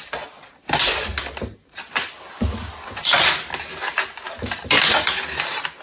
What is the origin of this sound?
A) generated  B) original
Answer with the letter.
B